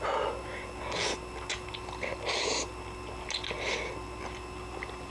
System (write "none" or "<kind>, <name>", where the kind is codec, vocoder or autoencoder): none